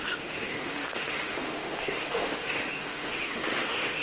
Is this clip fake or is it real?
fake